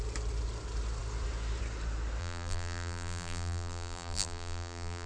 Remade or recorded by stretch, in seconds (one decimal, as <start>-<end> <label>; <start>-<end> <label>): 0.0-2.2 recorded; 2.2-5.1 remade